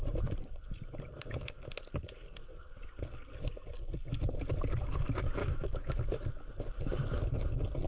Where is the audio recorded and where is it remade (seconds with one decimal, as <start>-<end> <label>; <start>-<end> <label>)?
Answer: 0.0-5.4 recorded; 5.4-5.9 remade; 5.9-7.9 recorded